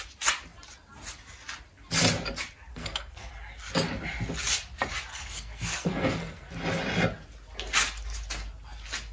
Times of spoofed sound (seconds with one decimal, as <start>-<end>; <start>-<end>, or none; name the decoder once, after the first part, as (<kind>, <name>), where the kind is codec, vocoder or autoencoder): 2.7-3.3 (codec, SNAC); 5.1-6.5